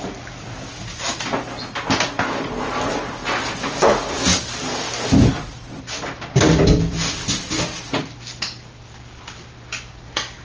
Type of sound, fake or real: real